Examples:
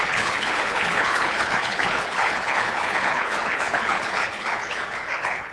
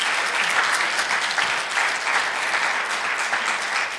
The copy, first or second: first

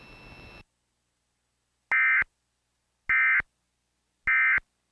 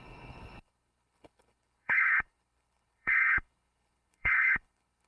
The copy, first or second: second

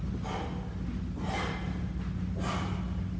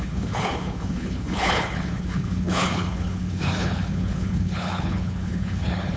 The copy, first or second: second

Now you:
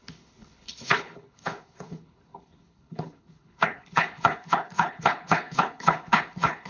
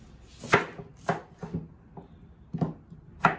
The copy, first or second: first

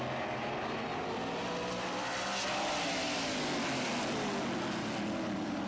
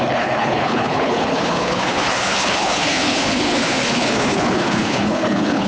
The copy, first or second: second